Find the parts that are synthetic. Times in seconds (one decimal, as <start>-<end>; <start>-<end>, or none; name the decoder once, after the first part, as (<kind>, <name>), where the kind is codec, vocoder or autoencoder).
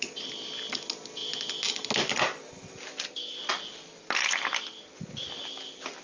none